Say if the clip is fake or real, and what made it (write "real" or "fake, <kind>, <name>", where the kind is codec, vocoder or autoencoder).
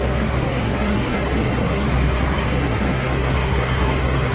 fake, codec, SNAC